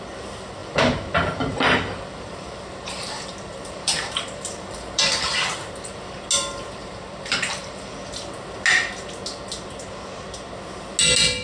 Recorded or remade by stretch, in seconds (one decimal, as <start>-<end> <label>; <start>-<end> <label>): 0.0-0.6 recorded; 0.6-5.2 remade; 5.2-6.8 recorded; 6.8-7.9 remade; 7.9-11.4 recorded